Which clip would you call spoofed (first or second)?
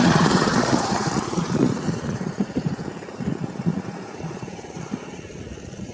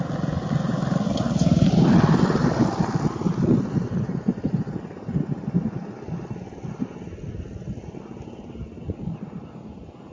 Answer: first